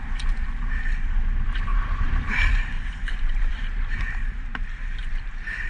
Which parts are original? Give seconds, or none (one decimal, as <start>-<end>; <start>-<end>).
0.0-1.7; 3.5-5.0